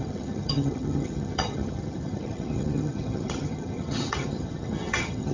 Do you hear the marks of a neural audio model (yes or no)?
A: yes